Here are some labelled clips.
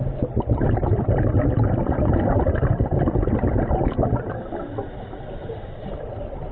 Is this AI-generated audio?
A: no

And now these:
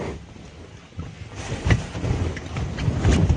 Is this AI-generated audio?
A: no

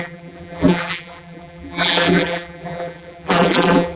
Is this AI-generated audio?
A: yes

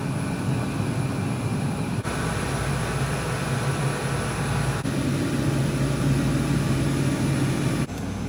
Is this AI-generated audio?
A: no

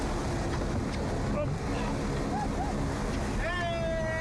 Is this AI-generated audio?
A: no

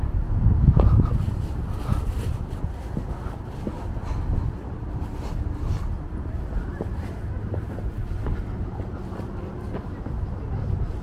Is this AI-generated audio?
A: no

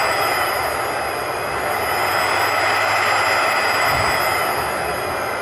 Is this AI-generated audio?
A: no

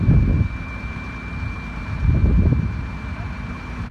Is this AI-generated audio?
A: yes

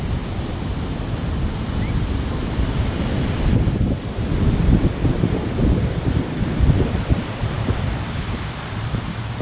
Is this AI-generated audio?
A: yes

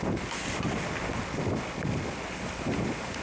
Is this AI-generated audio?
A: no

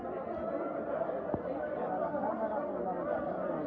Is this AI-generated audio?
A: yes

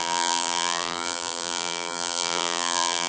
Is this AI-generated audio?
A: yes